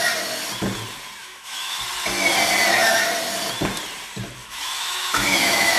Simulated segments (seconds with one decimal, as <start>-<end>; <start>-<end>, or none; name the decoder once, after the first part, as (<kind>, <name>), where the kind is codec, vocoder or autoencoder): 1.2-1.8 (autoencoder, DAC-VAE); 4.4-5.8